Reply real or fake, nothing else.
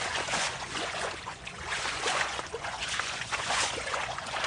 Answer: fake